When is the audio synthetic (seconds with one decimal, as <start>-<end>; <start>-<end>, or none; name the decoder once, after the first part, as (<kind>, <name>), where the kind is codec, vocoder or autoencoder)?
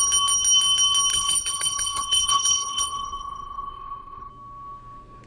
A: 1.1-4.3 (codec, HILCodec)